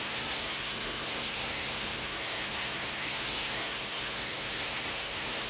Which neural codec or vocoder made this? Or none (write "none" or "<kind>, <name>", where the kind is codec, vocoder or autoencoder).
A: codec, SNAC